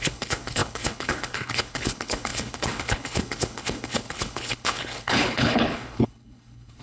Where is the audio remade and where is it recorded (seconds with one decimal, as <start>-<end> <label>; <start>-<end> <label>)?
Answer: 0.0-6.8 remade

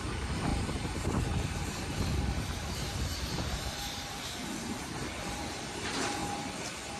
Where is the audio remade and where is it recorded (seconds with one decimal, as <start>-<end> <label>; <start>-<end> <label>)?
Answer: 0.0-6.2 remade; 6.2-7.0 recorded

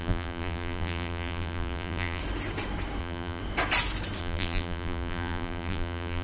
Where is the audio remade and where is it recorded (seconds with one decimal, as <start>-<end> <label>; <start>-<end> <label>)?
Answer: 0.0-2.2 remade; 2.2-3.0 recorded; 3.0-3.4 remade; 3.4-4.2 recorded; 4.2-6.2 remade

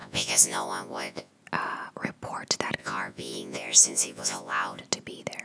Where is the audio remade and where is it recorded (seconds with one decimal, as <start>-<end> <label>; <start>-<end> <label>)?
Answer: 0.0-1.3 remade; 1.3-2.8 recorded; 2.8-4.8 remade; 4.8-5.4 recorded

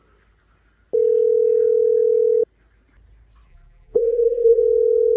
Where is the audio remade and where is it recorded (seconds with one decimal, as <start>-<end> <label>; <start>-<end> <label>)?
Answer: 0.0-3.5 recorded; 3.5-4.6 remade; 4.6-5.2 recorded

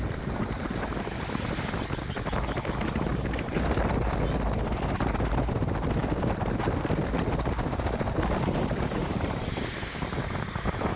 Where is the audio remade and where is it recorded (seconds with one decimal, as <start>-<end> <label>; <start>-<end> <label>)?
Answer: 0.0-9.0 recorded; 9.0-9.6 remade; 9.6-11.0 recorded

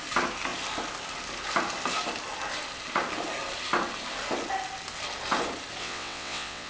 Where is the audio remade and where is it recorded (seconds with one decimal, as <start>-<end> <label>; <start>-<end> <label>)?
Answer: 0.0-5.8 recorded; 5.8-6.7 remade